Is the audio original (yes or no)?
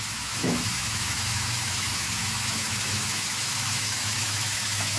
no